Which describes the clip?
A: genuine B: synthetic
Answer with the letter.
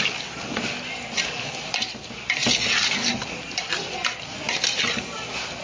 A